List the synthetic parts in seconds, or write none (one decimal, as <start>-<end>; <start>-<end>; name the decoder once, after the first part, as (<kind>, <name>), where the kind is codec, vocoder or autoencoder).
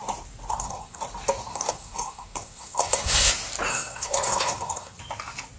0.5-1.0 (codec, SNAC); 1.5-3.3; 3.7-5.0